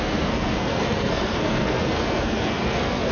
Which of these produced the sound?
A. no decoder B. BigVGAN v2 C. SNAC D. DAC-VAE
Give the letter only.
C